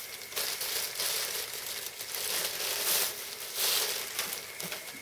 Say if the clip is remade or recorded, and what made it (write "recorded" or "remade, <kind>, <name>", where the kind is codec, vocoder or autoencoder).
recorded